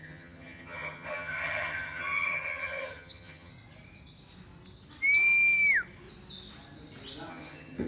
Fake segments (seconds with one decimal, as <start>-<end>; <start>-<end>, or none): 0.0-3.5; 7.3-7.9

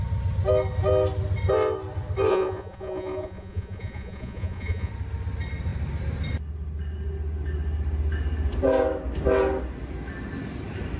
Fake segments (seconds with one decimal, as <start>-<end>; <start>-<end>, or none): 2.3-4.9

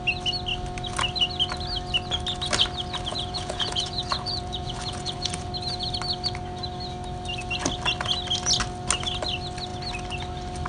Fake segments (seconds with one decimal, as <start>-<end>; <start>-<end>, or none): 3.1-5.5

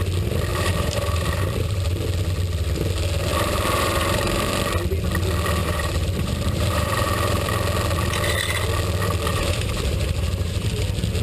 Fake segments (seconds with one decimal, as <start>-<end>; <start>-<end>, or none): 0.5-1.8; 3.3-4.5; 5.6-7.5; 9.3-10.6

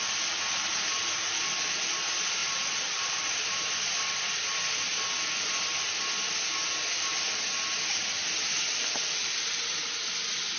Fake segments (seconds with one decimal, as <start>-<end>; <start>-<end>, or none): 2.4-3.7

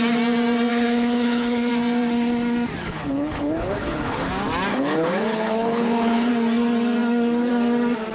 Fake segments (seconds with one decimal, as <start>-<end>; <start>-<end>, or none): 0.7-1.7; 2.8-4.3; 4.7-6.3

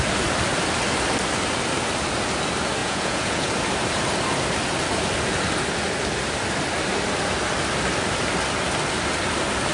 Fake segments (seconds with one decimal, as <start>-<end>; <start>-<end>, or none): 2.8-3.5

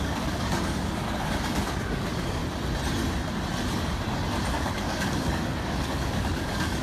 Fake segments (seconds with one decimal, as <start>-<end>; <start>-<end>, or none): 0.0-2.4; 4.5-6.8